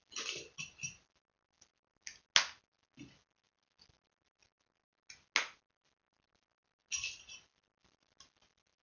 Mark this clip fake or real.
real